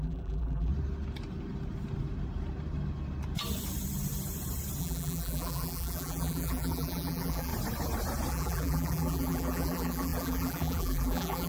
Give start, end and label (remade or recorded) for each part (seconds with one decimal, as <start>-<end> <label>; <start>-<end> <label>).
0.0-0.7 remade; 0.7-4.8 recorded; 4.8-7.5 remade; 7.5-8.3 recorded; 8.3-11.5 remade

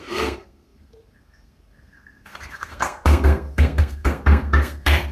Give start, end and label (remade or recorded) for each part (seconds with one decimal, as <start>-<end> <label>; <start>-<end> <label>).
0.0-5.1 remade